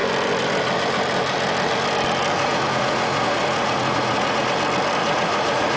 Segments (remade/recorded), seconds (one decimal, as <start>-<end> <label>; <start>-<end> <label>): 0.0-2.3 recorded; 2.3-4.5 remade; 4.5-5.0 recorded; 5.0-5.8 remade